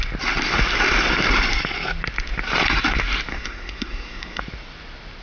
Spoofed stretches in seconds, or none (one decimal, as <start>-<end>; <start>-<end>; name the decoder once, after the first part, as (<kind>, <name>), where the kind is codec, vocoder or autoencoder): 3.3-4.4 (codec, SNAC)